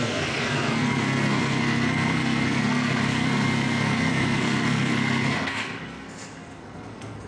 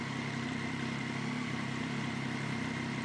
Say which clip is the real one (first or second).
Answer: second